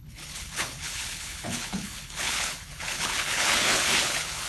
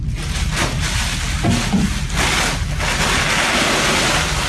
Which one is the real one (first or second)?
second